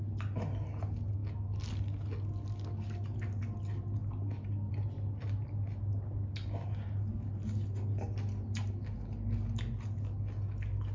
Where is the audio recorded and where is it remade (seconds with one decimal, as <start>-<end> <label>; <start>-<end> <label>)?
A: 0.0-10.9 recorded